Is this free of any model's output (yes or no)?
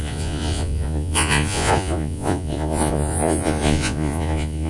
no